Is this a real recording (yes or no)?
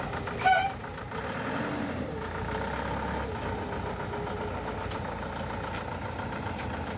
yes